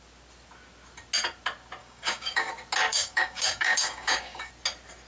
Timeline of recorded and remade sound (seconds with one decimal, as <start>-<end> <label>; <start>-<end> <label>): 0.0-1.8 recorded; 1.8-2.5 remade; 2.5-2.9 recorded; 2.9-4.5 remade; 4.5-5.1 recorded